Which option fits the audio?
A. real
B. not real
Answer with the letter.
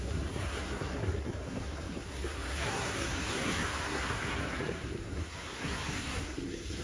B